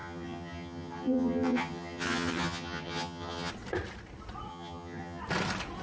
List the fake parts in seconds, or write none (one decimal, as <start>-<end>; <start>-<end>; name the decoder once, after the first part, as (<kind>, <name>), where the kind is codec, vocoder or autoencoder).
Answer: 0.0-3.5 (vocoder, HiFi-GAN); 4.5-5.2